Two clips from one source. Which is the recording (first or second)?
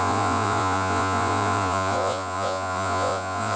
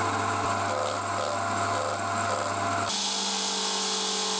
second